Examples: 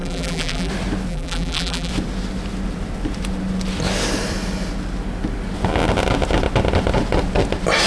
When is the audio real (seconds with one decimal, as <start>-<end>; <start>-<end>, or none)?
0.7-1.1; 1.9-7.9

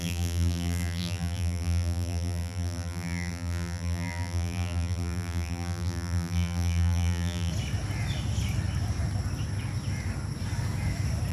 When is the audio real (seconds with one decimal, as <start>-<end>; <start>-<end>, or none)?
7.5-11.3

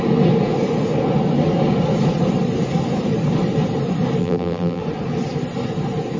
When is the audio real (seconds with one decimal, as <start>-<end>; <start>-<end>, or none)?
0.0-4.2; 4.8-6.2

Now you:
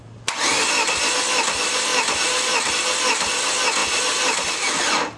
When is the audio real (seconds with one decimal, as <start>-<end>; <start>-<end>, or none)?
0.0-1.9; 2.7-3.8; 4.8-5.2

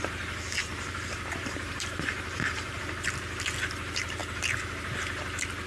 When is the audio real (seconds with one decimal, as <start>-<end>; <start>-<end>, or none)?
0.0-0.6; 2.8-5.7

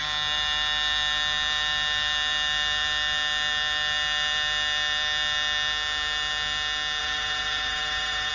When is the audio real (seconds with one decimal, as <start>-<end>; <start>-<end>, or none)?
0.0-7.0

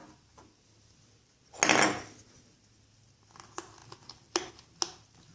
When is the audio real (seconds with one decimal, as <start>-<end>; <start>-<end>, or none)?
0.0-5.3